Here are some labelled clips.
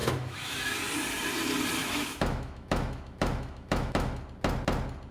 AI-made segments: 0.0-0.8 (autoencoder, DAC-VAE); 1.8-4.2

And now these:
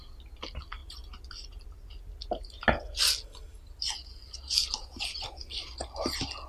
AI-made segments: none

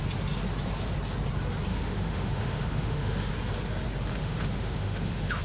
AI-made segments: 1.7-3.3 (autoencoder, DAC-VAE); 4.1-5.4

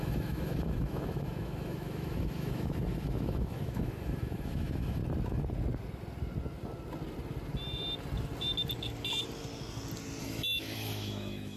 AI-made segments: 0.0-5.0 (autoencoder, DAC-VAE); 10.2-11.6

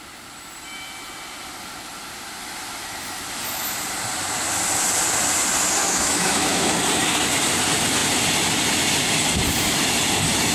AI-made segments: 5.8-6.7 (autoencoder, DAC-VAE)

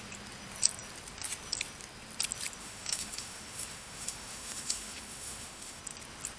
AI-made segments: 2.6-5.8 (autoencoder, DAC-VAE)

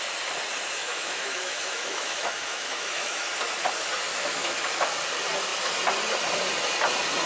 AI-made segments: 0.8-3.3 (autoencoder, DAC-VAE); 4.1-4.9